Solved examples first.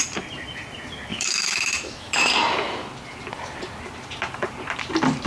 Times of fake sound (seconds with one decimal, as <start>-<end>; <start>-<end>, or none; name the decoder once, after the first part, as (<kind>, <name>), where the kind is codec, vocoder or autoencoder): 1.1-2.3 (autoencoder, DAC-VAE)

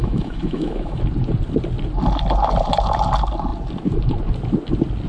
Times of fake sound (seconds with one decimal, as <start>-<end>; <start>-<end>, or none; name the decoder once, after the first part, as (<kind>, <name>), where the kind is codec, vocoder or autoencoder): 0.0-1.0 (autoencoder, DAC-VAE)

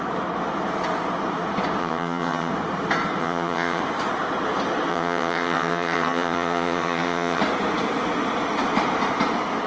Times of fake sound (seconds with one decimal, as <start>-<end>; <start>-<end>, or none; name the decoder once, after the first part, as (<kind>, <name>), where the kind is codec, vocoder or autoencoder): 1.8-2.5 (vocoder, HiFi-GAN); 3.2-3.8; 4.9-7.4